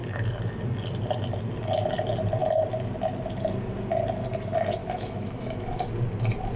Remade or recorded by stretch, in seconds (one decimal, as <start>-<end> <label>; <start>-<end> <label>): 0.0-4.8 recorded; 4.8-5.9 remade; 5.9-6.6 recorded